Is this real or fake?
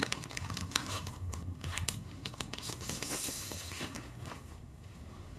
fake